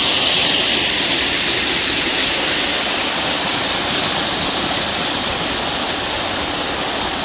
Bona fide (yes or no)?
yes